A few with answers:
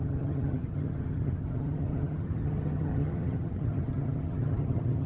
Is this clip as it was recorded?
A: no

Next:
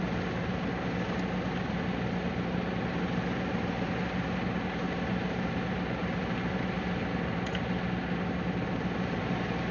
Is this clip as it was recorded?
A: yes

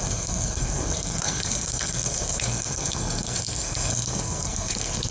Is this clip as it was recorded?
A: no